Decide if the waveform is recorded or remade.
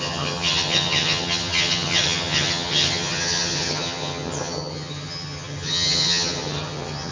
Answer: remade